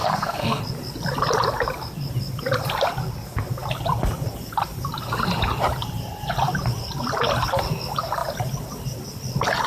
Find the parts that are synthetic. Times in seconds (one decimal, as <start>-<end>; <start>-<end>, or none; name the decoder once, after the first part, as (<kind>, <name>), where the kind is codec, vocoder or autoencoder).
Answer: 0.0-0.6 (codec, SNAC)